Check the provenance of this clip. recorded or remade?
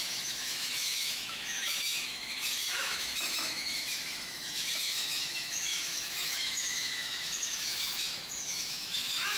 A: remade